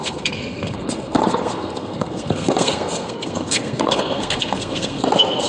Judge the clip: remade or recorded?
remade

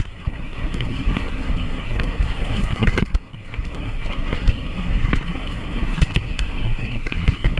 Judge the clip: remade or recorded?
remade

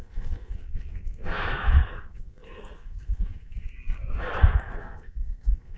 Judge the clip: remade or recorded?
remade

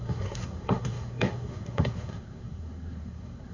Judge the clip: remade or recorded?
remade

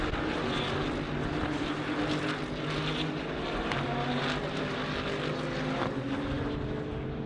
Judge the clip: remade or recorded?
recorded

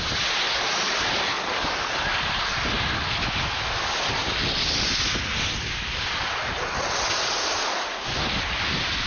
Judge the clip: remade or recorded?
recorded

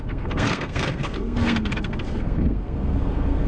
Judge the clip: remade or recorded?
remade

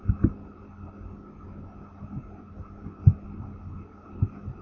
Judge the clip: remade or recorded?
recorded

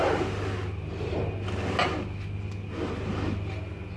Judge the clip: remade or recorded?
recorded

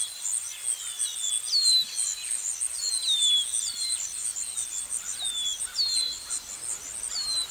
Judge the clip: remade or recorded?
recorded